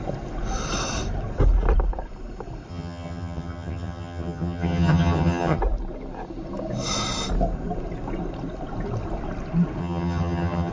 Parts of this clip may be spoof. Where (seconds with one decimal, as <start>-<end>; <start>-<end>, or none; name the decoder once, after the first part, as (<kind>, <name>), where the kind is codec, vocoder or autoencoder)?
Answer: 2.7-5.6 (vocoder, HiFi-GAN); 9.8-10.7